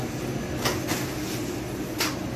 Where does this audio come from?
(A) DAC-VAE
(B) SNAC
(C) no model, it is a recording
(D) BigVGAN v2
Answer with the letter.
C